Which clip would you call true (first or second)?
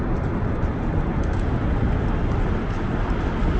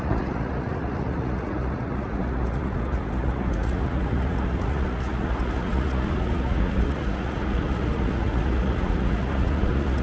first